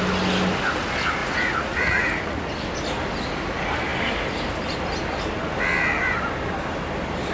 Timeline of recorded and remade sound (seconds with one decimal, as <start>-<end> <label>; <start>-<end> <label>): 0.0-1.2 recorded; 1.2-2.5 remade; 2.5-7.3 recorded